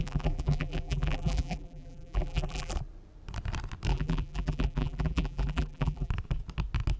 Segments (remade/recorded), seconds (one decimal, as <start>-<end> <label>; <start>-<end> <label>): 0.0-2.7 remade; 2.7-3.9 recorded; 3.9-6.1 remade; 6.1-7.0 recorded